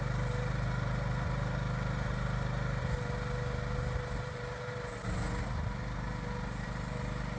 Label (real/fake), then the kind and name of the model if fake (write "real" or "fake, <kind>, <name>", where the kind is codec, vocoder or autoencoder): real